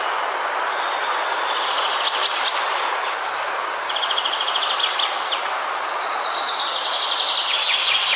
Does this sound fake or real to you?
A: real